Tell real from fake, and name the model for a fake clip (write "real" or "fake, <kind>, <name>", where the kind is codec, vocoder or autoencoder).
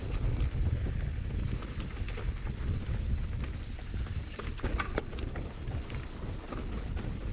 real